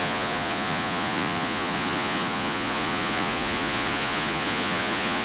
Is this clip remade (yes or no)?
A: yes